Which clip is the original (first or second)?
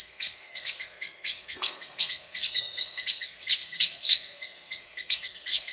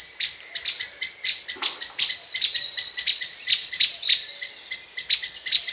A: second